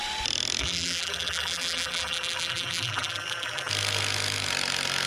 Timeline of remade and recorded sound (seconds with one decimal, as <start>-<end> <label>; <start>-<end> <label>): 0.0-0.6 recorded; 0.6-3.7 remade; 3.7-5.1 recorded